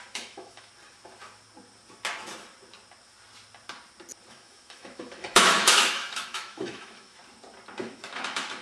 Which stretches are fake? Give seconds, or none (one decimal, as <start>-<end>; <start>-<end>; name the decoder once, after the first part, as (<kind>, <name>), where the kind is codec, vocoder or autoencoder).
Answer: 0.0-0.7 (autoencoder, DAC-VAE); 4.3-7.2; 7.8-8.6